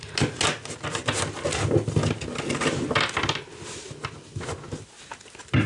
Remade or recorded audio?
recorded